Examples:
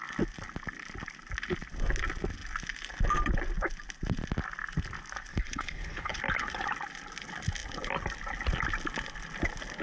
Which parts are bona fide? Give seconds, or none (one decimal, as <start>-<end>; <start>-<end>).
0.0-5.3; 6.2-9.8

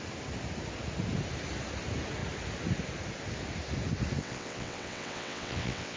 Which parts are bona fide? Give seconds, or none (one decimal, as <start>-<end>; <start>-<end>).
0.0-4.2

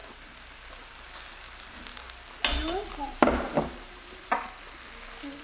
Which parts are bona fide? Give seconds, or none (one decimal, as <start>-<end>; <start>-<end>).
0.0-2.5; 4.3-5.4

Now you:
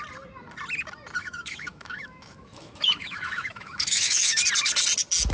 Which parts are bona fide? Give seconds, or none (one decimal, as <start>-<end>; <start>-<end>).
0.0-1.2; 4.4-5.3

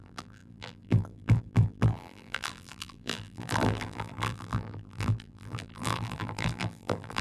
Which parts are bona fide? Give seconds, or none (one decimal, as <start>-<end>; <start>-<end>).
none